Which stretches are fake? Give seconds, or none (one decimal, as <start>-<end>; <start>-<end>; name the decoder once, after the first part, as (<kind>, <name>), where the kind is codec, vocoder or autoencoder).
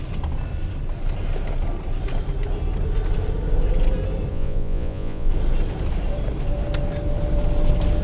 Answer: 4.3-5.3 (vocoder, Vocos)